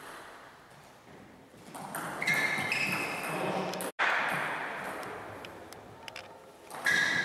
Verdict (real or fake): real